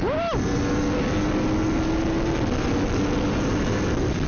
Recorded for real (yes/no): yes